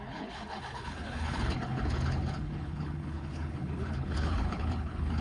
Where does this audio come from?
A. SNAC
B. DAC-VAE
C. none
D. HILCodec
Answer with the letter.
D